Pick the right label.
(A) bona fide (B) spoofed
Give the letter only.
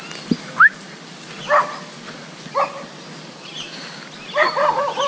A